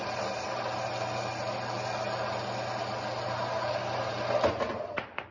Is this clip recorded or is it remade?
recorded